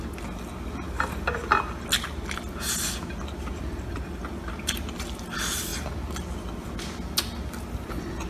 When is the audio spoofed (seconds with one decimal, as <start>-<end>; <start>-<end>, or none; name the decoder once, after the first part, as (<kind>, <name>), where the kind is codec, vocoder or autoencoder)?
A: none